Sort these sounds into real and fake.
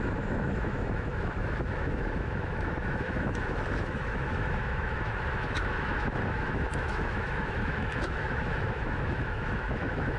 fake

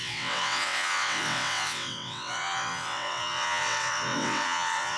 fake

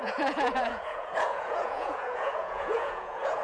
fake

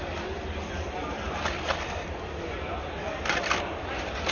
real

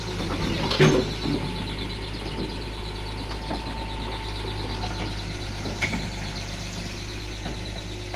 real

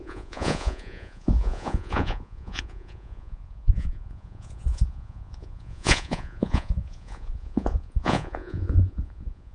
fake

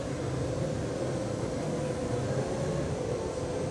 real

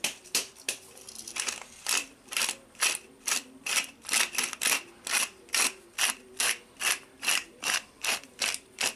fake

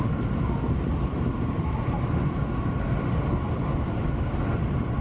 real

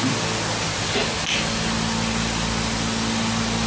real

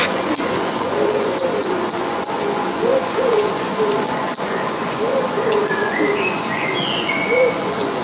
fake